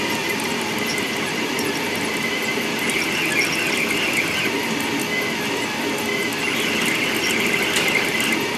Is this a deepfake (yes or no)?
no